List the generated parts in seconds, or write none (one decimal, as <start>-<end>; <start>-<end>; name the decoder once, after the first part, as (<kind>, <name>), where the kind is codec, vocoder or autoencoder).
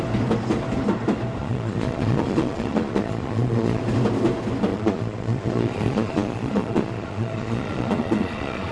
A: 1.4-3.8 (vocoder, Vocos); 4.7-8.7